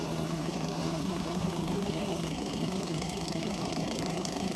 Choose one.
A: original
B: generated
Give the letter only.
B